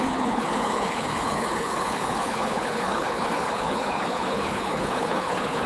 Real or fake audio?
fake